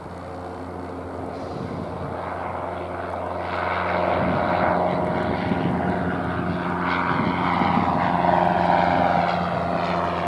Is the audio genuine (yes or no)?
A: yes